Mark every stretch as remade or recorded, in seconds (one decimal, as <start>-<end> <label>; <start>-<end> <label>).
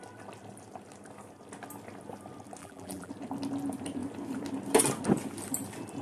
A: 0.0-2.6 recorded; 2.6-3.1 remade; 3.1-6.0 recorded